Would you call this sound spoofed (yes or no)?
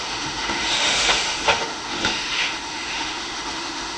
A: yes